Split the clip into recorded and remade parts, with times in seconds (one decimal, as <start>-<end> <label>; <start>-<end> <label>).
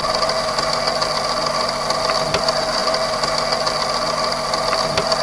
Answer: 0.0-5.2 recorded